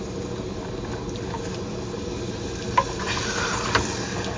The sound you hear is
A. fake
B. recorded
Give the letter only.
B